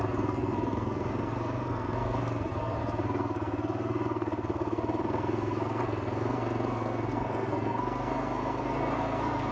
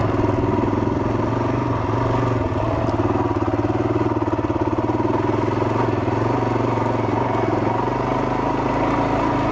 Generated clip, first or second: first